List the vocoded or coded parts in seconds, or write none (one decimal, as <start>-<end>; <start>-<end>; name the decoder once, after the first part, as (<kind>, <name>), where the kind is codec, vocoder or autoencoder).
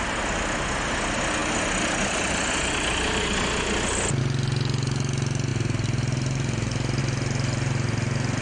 none